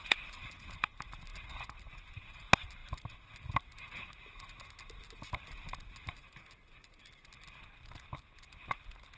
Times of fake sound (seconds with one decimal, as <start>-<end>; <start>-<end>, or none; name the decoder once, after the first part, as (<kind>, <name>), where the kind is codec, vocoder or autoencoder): none